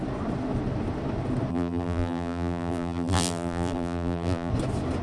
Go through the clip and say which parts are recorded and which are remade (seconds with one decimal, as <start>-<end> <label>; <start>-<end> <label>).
0.0-1.5 recorded; 1.5-4.5 remade; 4.5-5.0 recorded

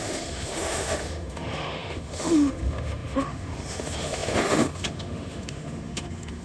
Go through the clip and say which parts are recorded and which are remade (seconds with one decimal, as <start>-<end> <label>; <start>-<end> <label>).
0.0-6.4 remade

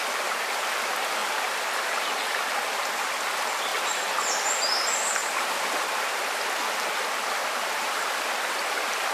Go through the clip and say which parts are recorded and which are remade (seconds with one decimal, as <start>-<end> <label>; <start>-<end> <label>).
0.0-1.2 recorded; 1.2-2.0 remade; 2.0-5.2 recorded; 5.2-6.2 remade; 6.2-7.4 recorded; 7.4-8.6 remade; 8.6-9.1 recorded

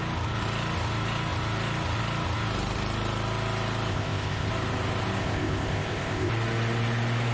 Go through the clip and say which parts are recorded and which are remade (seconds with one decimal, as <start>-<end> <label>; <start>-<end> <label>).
0.0-3.9 recorded; 3.9-4.5 remade; 4.5-5.2 recorded; 5.2-6.3 remade; 6.3-7.3 recorded

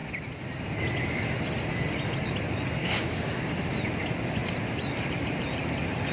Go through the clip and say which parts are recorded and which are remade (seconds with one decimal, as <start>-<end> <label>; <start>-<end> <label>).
0.0-2.8 recorded; 2.8-3.5 remade; 3.5-6.1 recorded

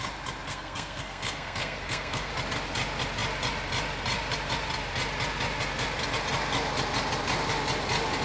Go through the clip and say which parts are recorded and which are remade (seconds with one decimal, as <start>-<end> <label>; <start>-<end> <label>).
0.0-0.5 recorded; 0.5-2.3 remade; 2.3-8.2 recorded